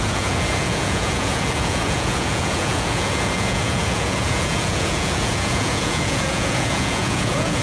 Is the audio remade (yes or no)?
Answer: yes